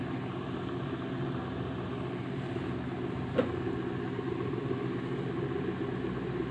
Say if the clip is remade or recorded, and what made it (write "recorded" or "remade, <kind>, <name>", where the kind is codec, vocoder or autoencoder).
recorded